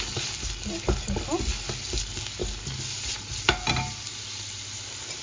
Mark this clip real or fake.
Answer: real